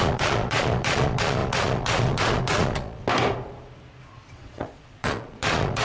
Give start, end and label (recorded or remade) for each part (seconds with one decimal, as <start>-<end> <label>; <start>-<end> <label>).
0.0-3.0 remade; 3.0-4.3 recorded; 4.3-5.8 remade